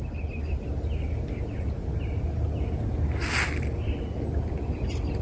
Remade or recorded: recorded